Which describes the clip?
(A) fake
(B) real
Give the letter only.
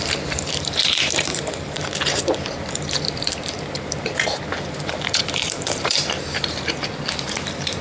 A